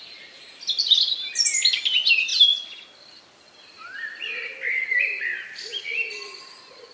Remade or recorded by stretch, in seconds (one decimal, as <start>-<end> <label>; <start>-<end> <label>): 0.0-6.9 recorded